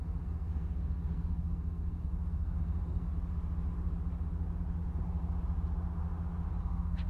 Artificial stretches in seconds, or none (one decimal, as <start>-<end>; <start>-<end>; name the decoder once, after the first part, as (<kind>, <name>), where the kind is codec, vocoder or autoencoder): 0.0-3.1 (codec, SNAC); 6.5-7.1